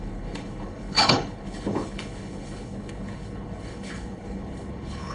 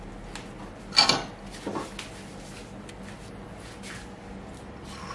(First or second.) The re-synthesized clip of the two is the first